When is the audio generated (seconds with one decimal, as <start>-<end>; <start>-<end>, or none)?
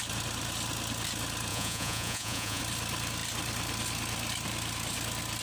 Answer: 1.5-2.6